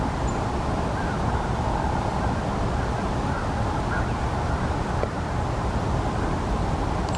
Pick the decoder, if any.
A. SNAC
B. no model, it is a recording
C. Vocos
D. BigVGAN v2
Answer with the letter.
B